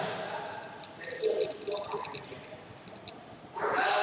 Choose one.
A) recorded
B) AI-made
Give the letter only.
A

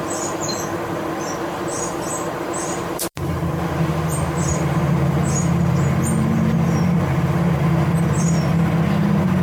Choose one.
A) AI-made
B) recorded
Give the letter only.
A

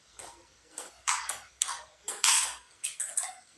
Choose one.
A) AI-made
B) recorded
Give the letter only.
A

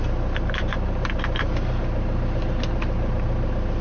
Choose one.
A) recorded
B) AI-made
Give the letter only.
A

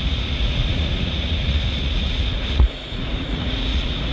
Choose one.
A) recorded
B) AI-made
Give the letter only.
B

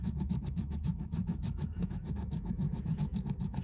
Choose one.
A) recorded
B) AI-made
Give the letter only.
B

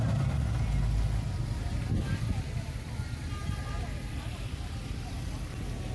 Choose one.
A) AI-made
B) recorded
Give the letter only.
B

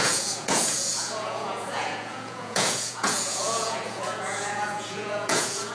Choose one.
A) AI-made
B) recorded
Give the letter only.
A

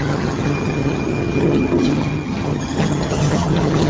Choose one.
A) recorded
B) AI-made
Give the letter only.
B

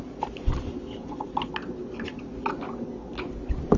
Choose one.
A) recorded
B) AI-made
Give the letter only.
A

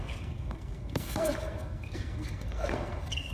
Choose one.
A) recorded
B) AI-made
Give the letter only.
B